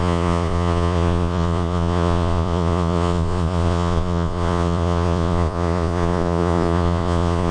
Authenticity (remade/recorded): remade